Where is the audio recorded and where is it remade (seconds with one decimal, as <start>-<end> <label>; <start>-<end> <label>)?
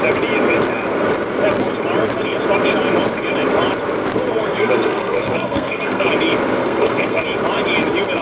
0.0-4.5 recorded; 4.5-6.1 remade; 6.1-6.6 recorded; 6.6-7.2 remade; 7.2-8.2 recorded